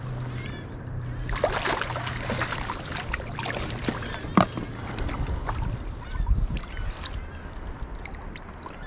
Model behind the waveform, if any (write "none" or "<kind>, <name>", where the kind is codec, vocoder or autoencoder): none